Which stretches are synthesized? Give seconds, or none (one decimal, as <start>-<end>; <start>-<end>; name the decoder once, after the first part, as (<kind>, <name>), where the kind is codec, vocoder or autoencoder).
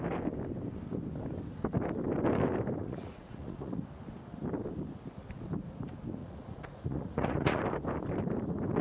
2.8-3.8 (vocoder, Vocos); 6.2-7.6